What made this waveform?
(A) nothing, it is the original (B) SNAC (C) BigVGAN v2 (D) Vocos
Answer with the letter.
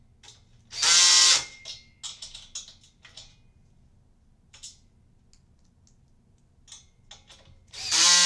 A